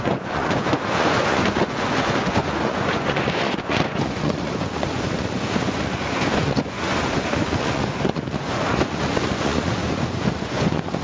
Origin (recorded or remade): remade